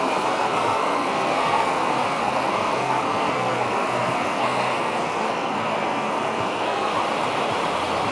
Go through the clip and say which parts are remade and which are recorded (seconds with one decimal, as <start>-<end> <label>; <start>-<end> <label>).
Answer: 0.0-6.9 remade; 6.9-8.1 recorded